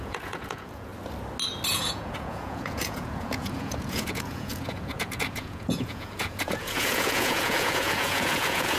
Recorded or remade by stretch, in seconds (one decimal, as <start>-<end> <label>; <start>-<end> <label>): 0.0-0.9 remade; 0.9-1.7 recorded; 1.7-8.8 remade